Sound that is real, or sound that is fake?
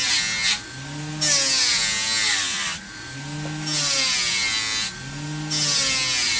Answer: real